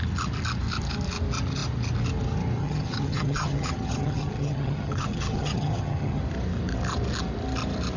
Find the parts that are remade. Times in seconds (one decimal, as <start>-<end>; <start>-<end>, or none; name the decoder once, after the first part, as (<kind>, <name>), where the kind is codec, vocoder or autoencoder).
2.6-6.2 (vocoder, HiFi-GAN)